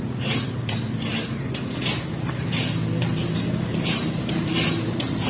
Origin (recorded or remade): remade